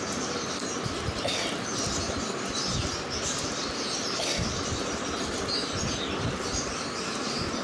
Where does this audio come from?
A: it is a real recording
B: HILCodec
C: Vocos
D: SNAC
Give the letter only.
A